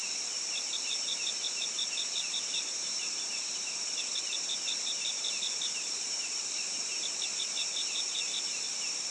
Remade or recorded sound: remade